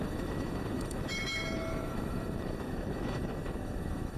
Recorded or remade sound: remade